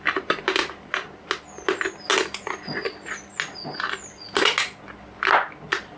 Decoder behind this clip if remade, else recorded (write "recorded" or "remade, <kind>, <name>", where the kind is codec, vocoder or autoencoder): recorded